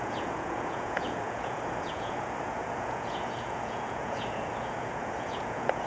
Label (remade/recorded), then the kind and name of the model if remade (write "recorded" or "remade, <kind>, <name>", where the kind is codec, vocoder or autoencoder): remade, vocoder, Vocos